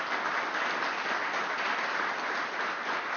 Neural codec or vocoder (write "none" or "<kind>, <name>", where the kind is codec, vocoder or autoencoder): none